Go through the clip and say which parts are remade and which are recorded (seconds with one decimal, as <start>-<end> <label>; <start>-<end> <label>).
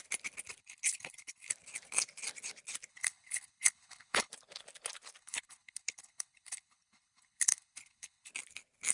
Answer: 0.0-0.6 recorded; 0.6-1.5 remade; 1.5-2.9 recorded; 2.9-4.3 remade; 4.3-5.2 recorded; 5.2-8.3 remade; 8.3-8.9 recorded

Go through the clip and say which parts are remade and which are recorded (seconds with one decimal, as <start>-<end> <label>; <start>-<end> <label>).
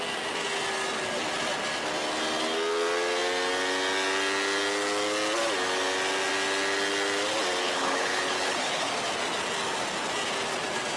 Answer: 0.0-7.6 recorded; 7.6-8.9 remade; 8.9-11.0 recorded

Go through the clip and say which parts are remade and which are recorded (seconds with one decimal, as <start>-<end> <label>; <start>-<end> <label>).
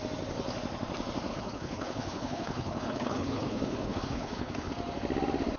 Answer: 0.0-1.3 recorded; 1.3-4.7 remade; 4.7-5.6 recorded